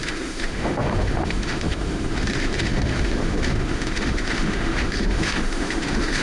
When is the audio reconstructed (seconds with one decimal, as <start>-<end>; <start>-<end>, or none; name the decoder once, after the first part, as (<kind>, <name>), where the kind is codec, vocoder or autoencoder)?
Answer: 0.0-6.2 (autoencoder, DAC-VAE)